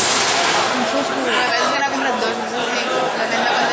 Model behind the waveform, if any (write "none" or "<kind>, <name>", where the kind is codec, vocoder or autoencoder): none